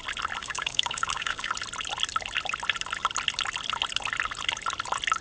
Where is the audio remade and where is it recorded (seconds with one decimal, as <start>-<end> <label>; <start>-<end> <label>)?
0.0-0.4 recorded; 0.4-1.5 remade; 1.5-5.2 recorded